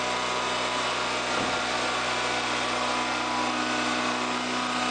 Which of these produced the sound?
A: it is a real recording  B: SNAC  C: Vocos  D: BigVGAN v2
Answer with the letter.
A